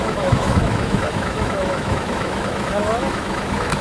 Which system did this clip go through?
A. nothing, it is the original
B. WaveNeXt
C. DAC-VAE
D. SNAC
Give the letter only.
C